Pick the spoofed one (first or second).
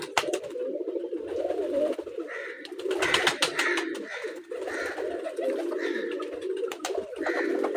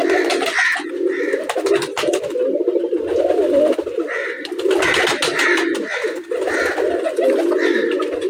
first